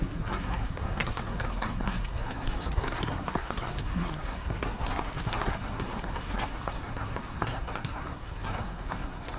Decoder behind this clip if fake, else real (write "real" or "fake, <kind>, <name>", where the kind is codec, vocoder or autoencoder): fake, codec, SNAC